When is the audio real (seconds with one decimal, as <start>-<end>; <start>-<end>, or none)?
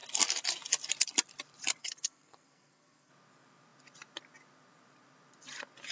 0.0-1.8; 3.1-5.9